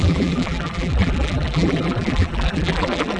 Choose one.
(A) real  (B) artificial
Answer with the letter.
B